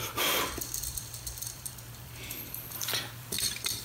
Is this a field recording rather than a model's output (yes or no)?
no